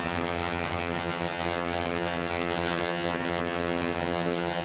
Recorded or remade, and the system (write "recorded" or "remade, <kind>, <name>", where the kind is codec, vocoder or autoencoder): remade, vocoder, HiFi-GAN